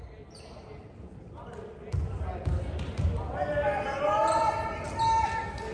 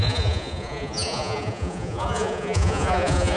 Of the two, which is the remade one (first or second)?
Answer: second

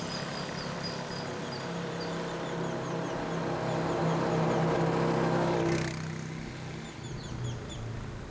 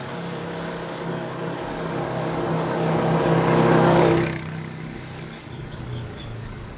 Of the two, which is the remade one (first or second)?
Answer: second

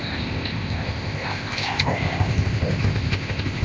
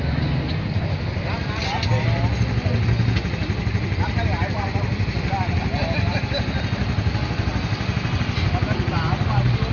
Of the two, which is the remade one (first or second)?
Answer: first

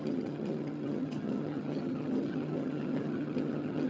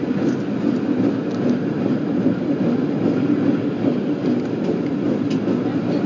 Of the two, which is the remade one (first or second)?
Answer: first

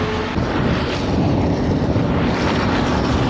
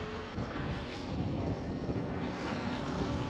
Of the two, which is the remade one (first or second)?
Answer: second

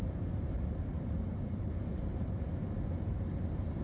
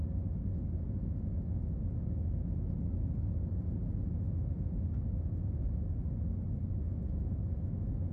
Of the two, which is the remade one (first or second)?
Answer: first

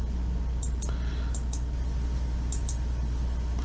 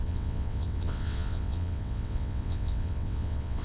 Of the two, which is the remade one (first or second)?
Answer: second